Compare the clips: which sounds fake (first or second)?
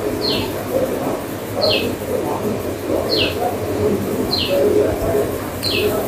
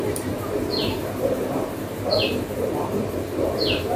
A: second